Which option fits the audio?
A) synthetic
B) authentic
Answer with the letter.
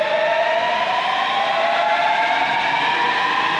B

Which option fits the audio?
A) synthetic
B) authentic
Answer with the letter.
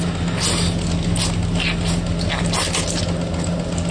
B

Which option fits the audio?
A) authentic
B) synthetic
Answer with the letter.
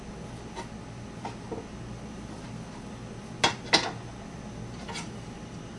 A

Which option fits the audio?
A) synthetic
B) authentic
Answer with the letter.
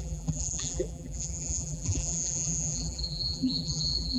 A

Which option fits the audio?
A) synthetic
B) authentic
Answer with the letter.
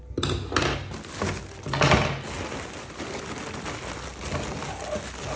B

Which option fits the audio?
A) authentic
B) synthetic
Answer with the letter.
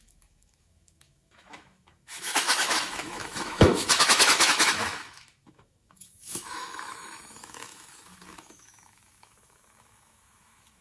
B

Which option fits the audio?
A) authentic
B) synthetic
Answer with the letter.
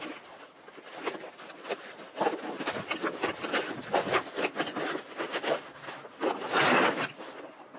A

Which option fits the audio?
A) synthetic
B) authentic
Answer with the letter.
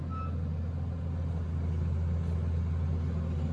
B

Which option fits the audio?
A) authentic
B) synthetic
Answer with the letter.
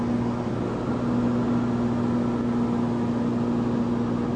A